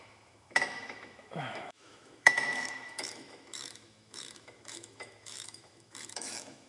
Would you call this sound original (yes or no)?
no